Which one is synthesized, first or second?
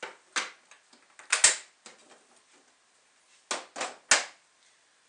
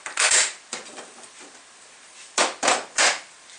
second